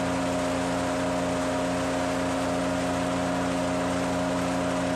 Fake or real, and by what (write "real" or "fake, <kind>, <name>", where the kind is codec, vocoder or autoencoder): real